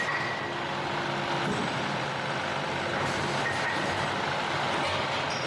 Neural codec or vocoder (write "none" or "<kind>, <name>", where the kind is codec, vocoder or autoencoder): none